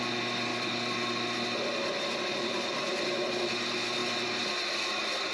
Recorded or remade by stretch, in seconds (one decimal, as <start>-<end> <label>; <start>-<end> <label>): 0.0-5.3 recorded